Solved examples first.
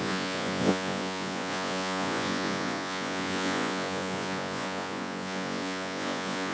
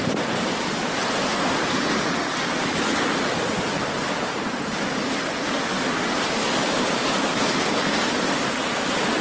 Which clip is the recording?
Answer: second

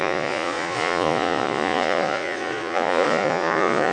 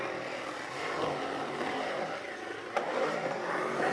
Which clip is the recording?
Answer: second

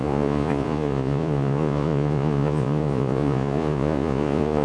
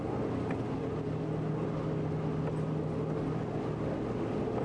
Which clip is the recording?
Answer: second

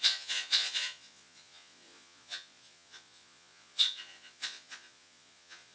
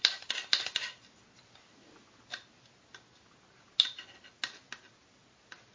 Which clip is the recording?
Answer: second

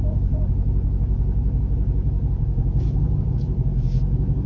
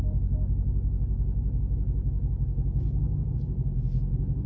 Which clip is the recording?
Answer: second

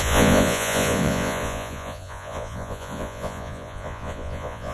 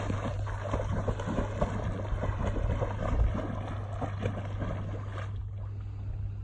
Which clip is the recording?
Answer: second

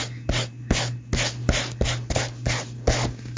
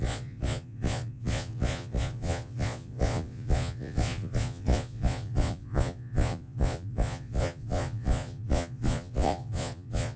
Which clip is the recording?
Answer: first